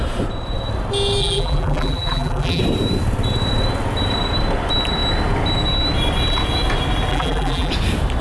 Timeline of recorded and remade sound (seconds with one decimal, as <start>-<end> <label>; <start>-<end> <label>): 0.0-1.2 recorded; 1.2-2.6 remade; 2.6-7.1 recorded; 7.1-7.7 remade; 7.7-8.2 recorded